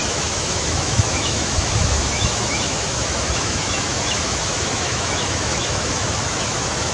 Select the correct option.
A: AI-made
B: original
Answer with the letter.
A